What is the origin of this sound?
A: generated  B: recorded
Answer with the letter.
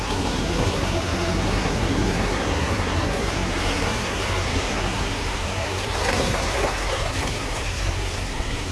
A